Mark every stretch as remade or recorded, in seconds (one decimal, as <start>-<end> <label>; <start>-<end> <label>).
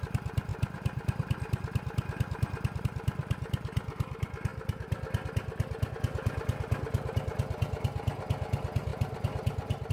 0.0-9.9 recorded